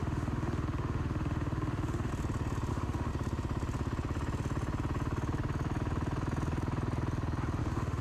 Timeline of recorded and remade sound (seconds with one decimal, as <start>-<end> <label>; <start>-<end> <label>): 0.0-2.1 remade; 2.1-2.7 recorded; 2.7-3.1 remade; 3.1-7.6 recorded; 7.6-8.0 remade